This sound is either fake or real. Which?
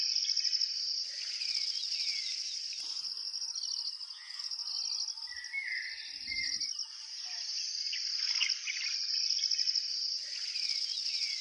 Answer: real